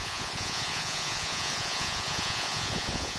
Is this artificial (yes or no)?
yes